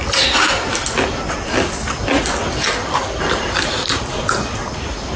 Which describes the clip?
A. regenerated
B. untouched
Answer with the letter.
B